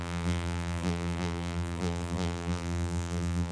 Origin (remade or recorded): remade